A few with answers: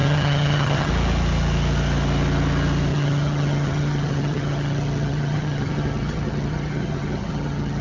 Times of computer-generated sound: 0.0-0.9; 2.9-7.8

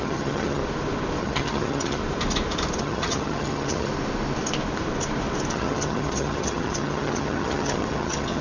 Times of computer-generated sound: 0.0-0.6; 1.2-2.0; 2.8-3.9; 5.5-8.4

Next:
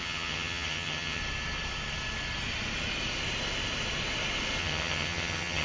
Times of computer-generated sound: 0.0-1.2; 4.6-5.6

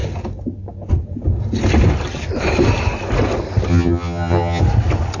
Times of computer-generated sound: 3.7-4.6

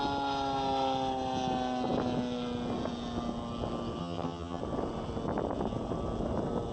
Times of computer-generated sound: 4.0-4.6

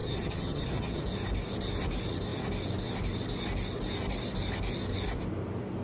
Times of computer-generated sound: 0.0-1.0

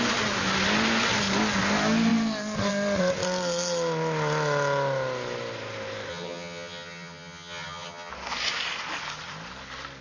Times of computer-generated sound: 6.1-8.1

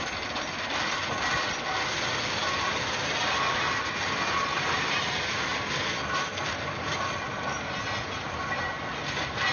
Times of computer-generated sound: none